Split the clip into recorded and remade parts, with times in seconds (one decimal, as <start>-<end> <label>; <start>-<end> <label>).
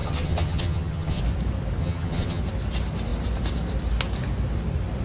0.0-1.2 remade; 1.2-1.8 recorded; 1.8-2.4 remade; 2.4-5.0 recorded